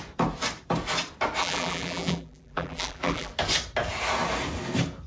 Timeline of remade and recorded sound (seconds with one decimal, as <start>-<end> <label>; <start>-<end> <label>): 0.0-1.4 recorded; 1.4-3.3 remade; 3.3-5.1 recorded